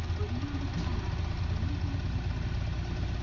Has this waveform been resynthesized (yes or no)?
no